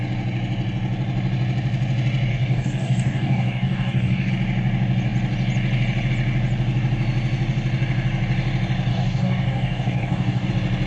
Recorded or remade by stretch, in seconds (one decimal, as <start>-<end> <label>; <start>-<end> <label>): 0.0-2.3 recorded; 2.3-4.3 remade; 4.3-8.9 recorded; 8.9-10.5 remade; 10.5-10.9 recorded